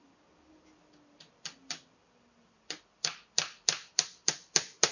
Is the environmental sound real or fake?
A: fake